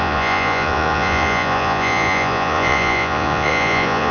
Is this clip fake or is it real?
fake